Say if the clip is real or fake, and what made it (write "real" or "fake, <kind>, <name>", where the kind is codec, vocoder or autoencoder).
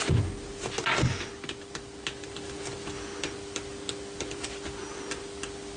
real